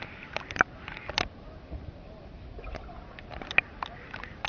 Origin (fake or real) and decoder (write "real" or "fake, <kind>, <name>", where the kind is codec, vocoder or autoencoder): real